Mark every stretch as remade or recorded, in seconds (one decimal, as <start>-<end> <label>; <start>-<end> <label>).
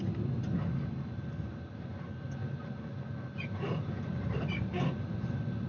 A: 0.0-5.7 recorded